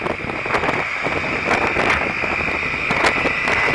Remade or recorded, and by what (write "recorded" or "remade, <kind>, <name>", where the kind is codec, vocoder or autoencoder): recorded